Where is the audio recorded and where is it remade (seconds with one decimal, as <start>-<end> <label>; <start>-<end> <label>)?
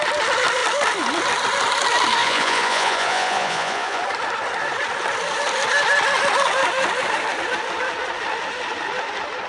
0.0-2.2 recorded; 2.2-4.0 remade; 4.0-9.5 recorded